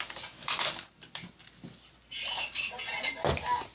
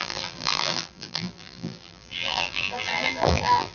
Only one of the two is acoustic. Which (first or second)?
first